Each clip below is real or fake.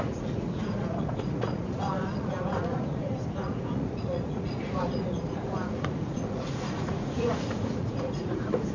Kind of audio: fake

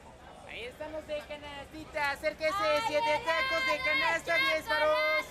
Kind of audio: real